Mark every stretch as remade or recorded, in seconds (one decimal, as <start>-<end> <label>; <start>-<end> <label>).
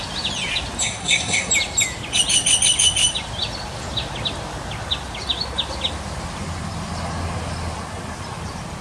0.0-0.8 recorded; 0.8-1.5 remade; 1.5-8.8 recorded